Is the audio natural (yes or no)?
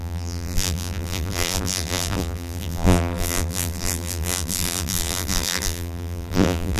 no